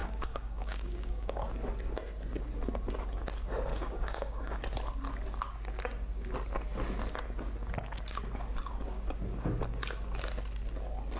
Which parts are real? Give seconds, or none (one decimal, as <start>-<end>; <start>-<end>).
1.5-3.7; 4.6-11.2